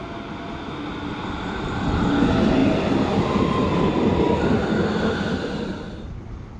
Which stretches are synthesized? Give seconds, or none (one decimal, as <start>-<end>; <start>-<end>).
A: none